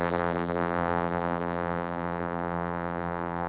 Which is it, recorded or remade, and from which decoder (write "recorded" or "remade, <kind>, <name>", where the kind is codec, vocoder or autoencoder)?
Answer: remade, vocoder, BigVGAN v2